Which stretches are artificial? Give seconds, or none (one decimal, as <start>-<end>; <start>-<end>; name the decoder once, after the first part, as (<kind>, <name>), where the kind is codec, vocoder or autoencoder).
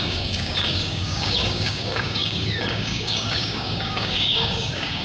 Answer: 0.0-5.0 (codec, DAC)